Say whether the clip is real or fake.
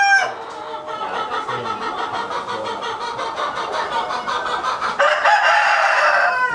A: real